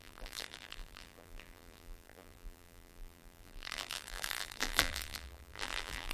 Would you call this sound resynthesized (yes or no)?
yes